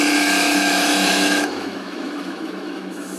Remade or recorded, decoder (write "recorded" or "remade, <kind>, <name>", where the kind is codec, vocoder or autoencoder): remade, autoencoder, DAC-VAE